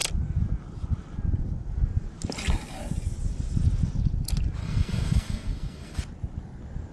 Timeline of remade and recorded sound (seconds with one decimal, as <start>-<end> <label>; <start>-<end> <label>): 0.0-4.6 recorded; 4.6-6.0 remade; 6.0-6.9 recorded